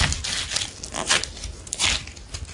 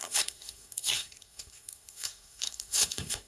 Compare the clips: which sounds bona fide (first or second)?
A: first